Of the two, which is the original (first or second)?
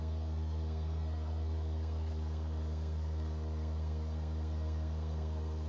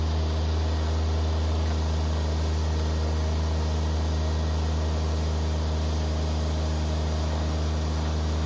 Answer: second